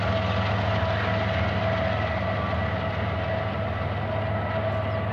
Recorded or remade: recorded